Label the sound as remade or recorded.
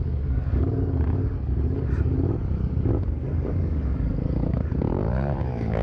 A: remade